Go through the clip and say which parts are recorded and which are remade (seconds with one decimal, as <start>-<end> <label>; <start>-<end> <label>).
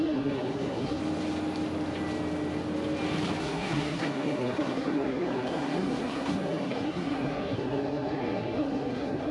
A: 0.0-1.0 remade; 1.0-3.4 recorded; 3.4-9.3 remade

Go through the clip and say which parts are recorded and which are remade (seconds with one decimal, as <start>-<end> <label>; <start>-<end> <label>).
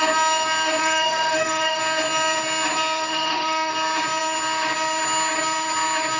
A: 0.0-0.8 recorded; 0.8-1.8 remade; 1.8-3.1 recorded; 3.1-3.7 remade; 3.7-6.2 recorded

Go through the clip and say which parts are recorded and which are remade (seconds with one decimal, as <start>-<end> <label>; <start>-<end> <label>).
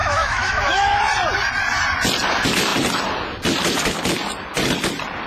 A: 0.0-1.0 remade; 1.0-5.3 recorded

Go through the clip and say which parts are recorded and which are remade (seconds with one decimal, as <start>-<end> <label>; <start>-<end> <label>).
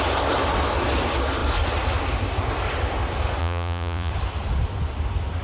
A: 0.0-3.4 recorded; 3.4-4.1 remade; 4.1-5.4 recorded